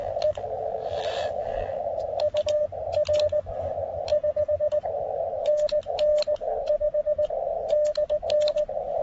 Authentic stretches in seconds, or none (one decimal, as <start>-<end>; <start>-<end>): 1.8-9.0

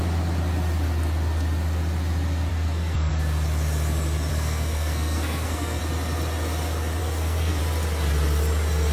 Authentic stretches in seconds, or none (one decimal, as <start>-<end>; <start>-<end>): 0.0-2.5; 3.1-4.3; 5.8-7.0; 7.6-8.9